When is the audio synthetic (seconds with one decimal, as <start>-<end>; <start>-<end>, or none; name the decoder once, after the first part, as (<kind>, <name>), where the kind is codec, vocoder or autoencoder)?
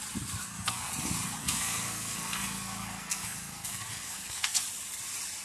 0.4-0.9 (codec, SNAC); 1.4-4.6